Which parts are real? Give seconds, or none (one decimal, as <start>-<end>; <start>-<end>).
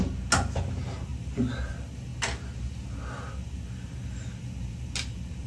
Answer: 0.0-5.5